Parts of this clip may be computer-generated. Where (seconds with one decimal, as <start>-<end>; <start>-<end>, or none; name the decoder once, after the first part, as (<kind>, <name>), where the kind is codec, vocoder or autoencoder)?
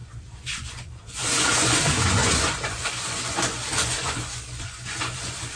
0.0-5.6 (vocoder, Vocos)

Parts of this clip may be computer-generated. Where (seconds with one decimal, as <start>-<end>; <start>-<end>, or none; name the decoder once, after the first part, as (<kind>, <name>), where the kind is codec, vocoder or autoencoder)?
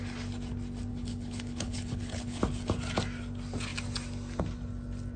0.9-2.4 (codec, HILCodec)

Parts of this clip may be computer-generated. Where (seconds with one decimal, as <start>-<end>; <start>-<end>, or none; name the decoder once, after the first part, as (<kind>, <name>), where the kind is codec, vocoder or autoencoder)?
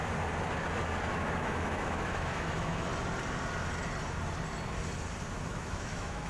1.1-2.9 (autoencoder, DAC-VAE); 5.4-6.3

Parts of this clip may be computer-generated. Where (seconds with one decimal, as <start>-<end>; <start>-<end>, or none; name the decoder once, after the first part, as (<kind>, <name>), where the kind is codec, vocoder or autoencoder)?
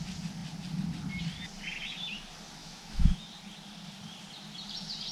2.6-3.3 (autoencoder, DAC-VAE)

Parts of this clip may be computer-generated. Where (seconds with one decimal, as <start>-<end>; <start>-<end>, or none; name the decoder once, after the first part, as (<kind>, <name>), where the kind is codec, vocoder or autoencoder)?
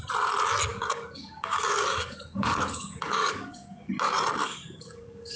0.7-3.9 (codec, DAC); 4.4-5.4